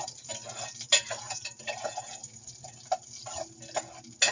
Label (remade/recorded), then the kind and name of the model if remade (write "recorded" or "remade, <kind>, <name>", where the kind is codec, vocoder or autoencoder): recorded